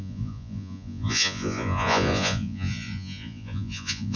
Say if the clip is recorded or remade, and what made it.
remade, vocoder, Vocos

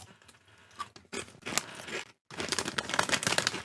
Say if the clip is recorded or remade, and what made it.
recorded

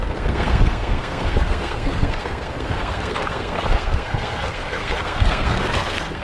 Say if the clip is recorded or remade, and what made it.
remade, codec, SNAC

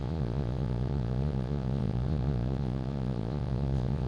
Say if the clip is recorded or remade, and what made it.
remade, vocoder, Vocos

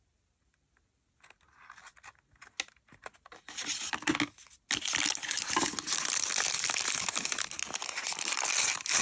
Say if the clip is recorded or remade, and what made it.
recorded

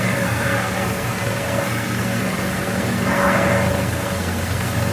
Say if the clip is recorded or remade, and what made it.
remade, codec, SNAC